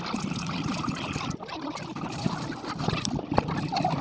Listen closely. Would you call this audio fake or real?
real